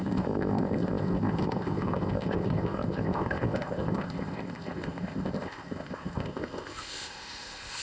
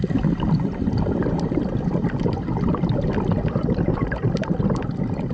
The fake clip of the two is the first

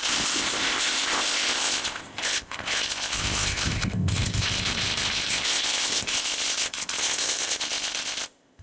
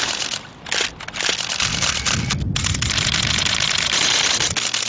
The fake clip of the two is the first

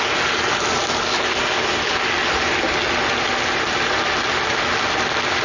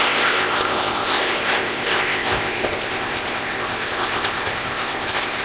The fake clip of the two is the second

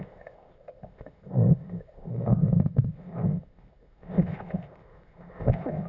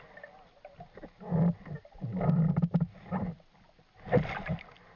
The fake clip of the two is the first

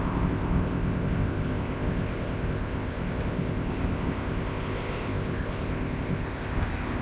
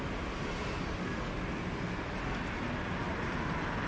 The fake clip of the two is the first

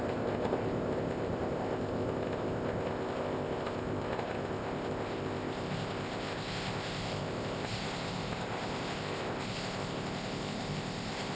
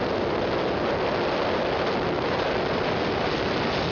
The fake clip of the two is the first